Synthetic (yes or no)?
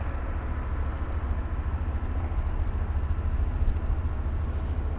no